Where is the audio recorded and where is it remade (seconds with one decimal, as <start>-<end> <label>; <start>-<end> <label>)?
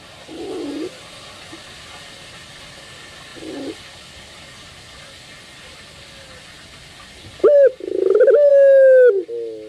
0.0-9.7 recorded